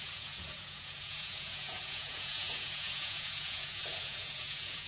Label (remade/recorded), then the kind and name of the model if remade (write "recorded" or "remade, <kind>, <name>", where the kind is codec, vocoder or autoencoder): remade, vocoder, Vocos